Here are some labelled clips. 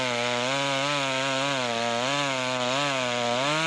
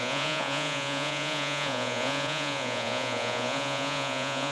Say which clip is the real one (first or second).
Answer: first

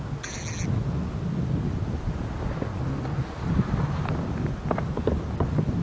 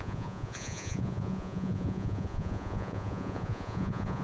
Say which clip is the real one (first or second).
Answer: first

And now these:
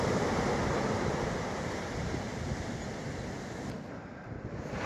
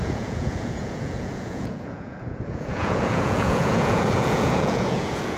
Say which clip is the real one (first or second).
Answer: first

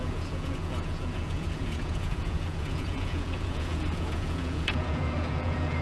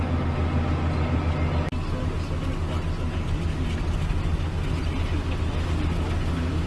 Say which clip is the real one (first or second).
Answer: second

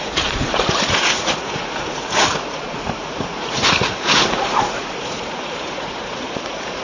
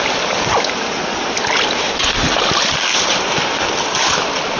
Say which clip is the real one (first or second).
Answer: second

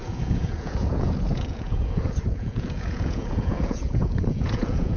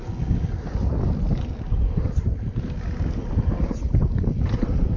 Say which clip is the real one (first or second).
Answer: second